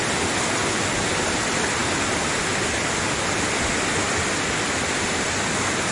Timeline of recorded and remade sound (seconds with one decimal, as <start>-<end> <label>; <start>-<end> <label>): 0.0-5.9 recorded